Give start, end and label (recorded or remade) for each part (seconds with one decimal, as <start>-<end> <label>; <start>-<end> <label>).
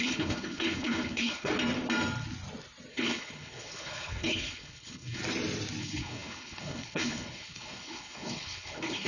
0.0-1.5 remade; 1.5-2.9 recorded; 2.9-5.2 remade; 5.2-5.8 recorded; 5.8-9.1 remade